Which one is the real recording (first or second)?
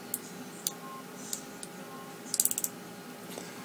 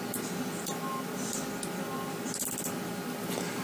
first